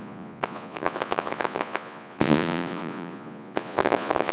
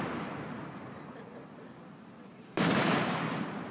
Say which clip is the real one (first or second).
second